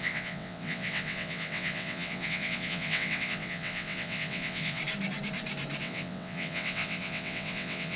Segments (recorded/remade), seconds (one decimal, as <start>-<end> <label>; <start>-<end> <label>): 0.0-4.8 remade; 4.8-5.8 recorded; 5.8-8.0 remade